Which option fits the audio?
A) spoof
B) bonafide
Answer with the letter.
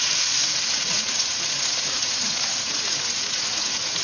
A